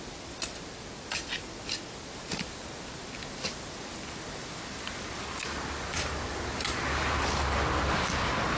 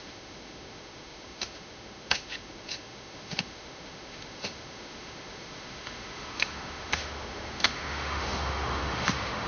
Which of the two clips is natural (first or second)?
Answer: first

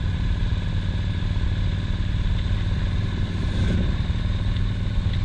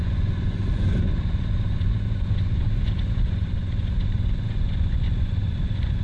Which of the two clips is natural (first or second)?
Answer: first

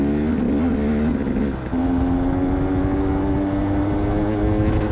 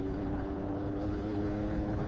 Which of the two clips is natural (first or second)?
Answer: first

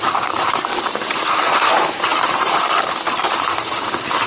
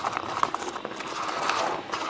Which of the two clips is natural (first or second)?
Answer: second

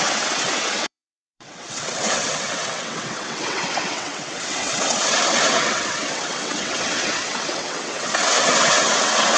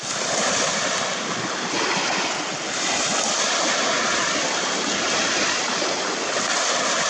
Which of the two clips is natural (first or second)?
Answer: second